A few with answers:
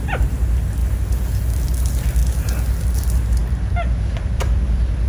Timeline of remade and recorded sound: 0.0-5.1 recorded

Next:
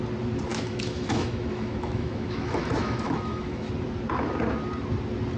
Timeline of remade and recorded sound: 0.0-0.5 recorded; 0.5-3.7 remade; 3.7-5.4 recorded

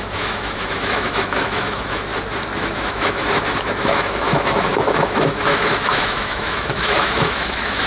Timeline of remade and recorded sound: 0.0-2.1 remade; 2.1-2.6 recorded; 2.6-7.9 remade

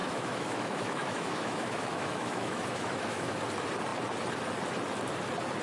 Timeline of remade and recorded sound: 0.0-3.4 remade; 3.4-5.6 recorded

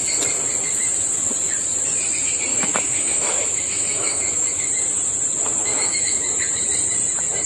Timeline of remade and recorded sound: 0.0-2.5 recorded; 2.5-4.7 remade; 4.7-5.6 recorded; 5.6-6.2 remade; 6.2-7.5 recorded

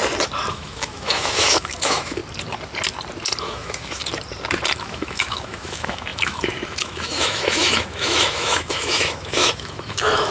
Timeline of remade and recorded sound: 0.0-0.5 recorded; 0.5-2.2 remade; 2.2-3.4 recorded; 3.4-4.0 remade; 4.0-4.8 recorded; 4.8-10.3 remade

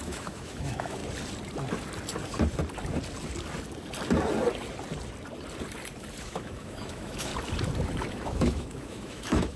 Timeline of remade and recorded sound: 0.0-1.0 remade; 1.0-6.2 recorded; 6.2-7.3 remade; 7.3-8.1 recorded; 8.1-9.6 remade